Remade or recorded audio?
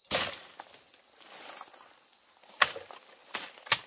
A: recorded